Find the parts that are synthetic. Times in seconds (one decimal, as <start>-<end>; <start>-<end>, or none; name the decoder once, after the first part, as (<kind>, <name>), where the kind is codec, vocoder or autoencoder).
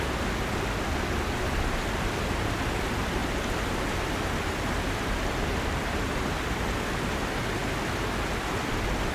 none